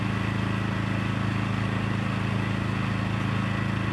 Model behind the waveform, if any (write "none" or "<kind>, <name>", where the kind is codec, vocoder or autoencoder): none